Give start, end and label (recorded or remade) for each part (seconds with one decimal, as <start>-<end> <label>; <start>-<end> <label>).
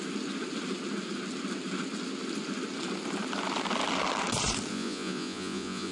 0.0-4.7 recorded; 4.7-5.9 remade